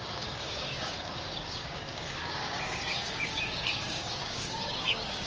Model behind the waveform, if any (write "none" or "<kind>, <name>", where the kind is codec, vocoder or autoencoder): codec, DAC